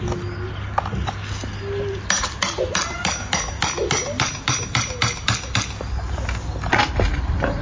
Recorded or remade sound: recorded